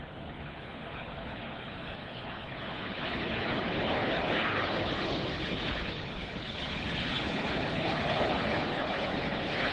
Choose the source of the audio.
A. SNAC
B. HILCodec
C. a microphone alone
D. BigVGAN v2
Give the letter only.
B